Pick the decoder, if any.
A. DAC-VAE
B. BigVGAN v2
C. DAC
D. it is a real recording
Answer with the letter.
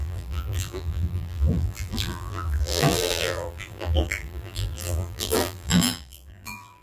B